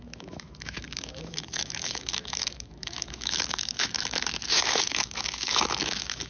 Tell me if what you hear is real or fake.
fake